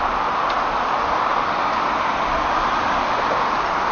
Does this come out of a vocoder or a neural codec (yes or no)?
no